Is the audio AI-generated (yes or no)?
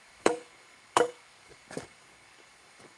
yes